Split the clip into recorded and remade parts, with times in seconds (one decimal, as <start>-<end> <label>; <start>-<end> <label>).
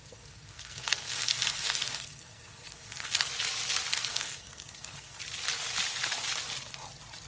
0.0-3.3 remade; 3.3-3.9 recorded; 3.9-5.2 remade; 5.2-7.3 recorded